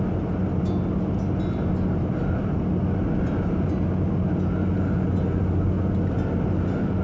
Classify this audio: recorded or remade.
recorded